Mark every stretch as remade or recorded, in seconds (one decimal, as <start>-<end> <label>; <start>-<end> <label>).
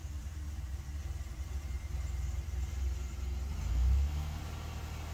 0.0-3.7 recorded; 3.7-4.4 remade; 4.4-5.1 recorded